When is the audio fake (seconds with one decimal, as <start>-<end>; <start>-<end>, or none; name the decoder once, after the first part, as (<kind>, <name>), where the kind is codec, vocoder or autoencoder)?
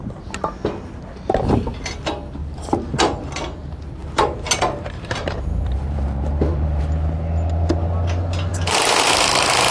2.4-3.3 (vocoder, BigVGAN v2); 4.0-6.8; 8.5-9.1